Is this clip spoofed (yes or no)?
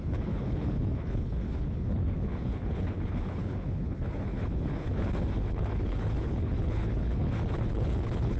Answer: yes